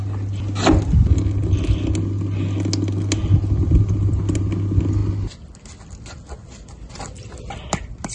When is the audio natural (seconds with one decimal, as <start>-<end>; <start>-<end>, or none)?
0.0-8.1